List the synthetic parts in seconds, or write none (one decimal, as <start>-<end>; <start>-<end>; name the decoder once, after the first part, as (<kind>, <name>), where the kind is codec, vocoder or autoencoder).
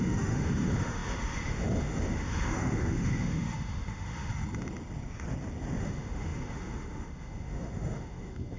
0.0-4.3 (autoencoder, DAC-VAE); 5.8-8.6